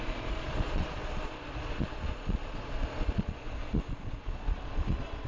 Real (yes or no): no